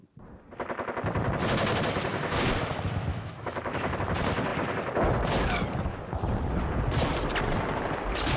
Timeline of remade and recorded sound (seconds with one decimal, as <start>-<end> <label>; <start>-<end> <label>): 0.0-3.1 recorded; 3.1-4.0 remade; 4.0-8.4 recorded